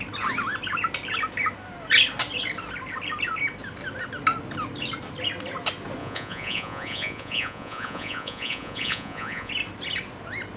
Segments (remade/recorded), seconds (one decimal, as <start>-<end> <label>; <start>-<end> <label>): 0.0-6.0 recorded; 6.0-9.5 remade; 9.5-10.6 recorded